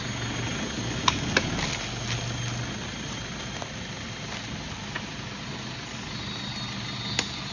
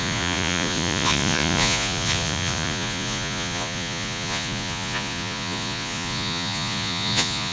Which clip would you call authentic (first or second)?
first